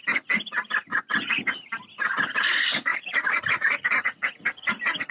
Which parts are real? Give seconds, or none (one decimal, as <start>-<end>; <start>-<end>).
0.0-0.9; 1.8-2.9

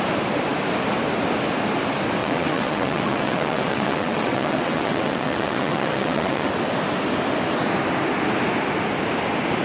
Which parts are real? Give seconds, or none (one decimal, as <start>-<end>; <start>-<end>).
0.0-2.2; 6.5-9.6

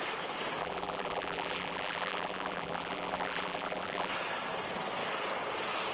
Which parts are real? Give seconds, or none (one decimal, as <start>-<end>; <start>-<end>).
0.0-0.6; 4.1-5.9

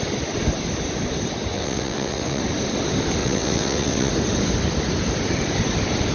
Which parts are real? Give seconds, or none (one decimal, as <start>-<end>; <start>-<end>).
0.0-1.5; 2.4-3.2; 4.1-6.1

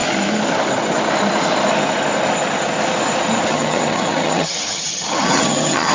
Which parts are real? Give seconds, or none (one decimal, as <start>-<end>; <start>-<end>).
0.0-3.5

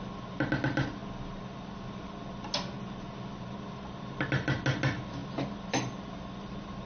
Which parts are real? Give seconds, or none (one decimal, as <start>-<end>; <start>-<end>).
0.0-6.9

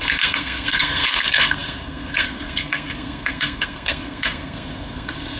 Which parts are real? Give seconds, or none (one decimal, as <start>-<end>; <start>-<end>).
none